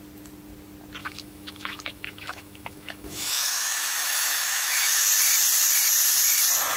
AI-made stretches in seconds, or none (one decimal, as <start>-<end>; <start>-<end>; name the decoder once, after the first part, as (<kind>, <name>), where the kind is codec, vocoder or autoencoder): 1.0-5.1 (autoencoder, DAC-VAE)